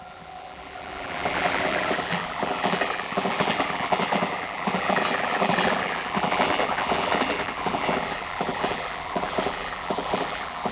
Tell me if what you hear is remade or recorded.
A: remade